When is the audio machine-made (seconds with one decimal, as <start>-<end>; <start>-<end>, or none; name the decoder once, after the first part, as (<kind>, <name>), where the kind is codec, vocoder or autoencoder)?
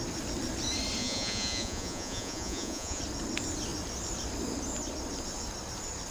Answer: 1.0-3.0 (vocoder, Vocos)